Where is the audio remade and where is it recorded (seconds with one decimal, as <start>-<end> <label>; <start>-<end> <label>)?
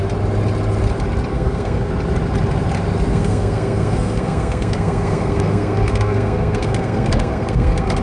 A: 0.0-1.3 recorded; 1.3-1.9 remade; 1.9-3.1 recorded; 3.1-8.0 remade